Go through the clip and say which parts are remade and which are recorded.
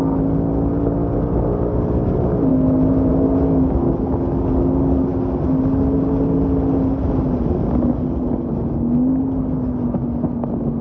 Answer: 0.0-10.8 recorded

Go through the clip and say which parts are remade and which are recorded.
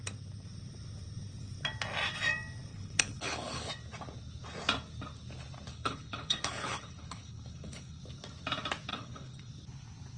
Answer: 0.0-2.7 recorded; 2.7-3.7 remade; 3.7-5.7 recorded; 5.7-8.0 remade; 8.0-8.9 recorded; 8.9-9.5 remade; 9.5-10.2 recorded